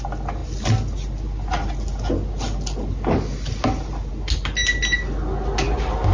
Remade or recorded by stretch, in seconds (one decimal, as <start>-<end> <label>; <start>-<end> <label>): 0.0-6.1 recorded